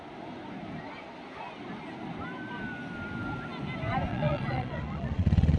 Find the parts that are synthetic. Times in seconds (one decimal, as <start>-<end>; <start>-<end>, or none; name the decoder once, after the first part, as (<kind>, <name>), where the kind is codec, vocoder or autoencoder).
4.1-5.6 (vocoder, Vocos)